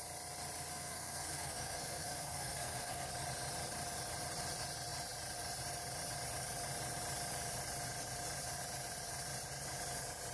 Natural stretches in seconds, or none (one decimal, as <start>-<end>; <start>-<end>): 0.0-0.7; 3.1-10.3